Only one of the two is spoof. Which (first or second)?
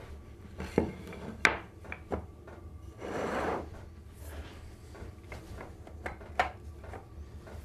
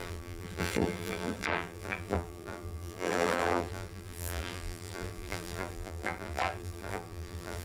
second